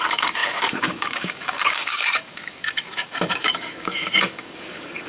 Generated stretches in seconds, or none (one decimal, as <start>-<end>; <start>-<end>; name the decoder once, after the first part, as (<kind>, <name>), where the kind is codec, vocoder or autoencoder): 0.0-5.1 (codec, DAC)